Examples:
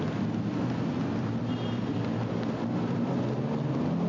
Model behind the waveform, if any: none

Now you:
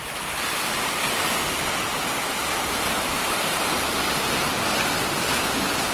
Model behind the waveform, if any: none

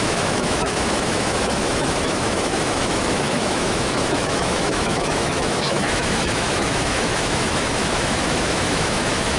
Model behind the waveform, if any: autoencoder, DAC-VAE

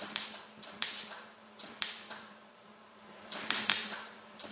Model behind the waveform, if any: vocoder, BigVGAN v2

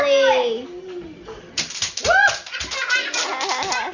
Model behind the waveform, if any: none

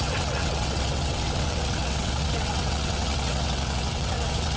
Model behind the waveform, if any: vocoder, WaveNeXt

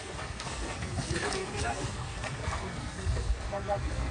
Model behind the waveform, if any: codec, SNAC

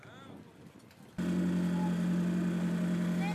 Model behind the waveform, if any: none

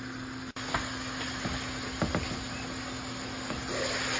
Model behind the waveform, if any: none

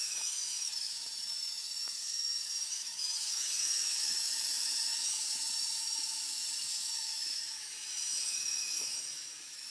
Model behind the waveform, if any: autoencoder, DAC-VAE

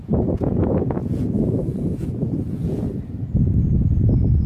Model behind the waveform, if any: vocoder, Vocos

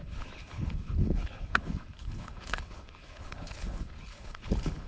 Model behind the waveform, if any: codec, HILCodec